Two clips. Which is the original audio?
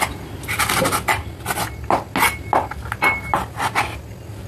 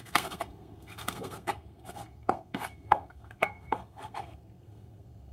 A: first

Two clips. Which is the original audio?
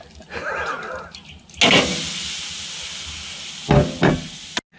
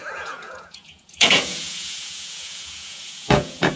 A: first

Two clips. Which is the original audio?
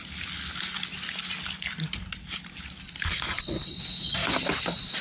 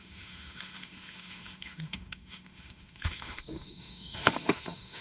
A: first